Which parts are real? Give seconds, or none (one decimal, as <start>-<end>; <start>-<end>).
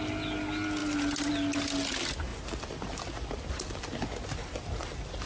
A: 0.0-5.3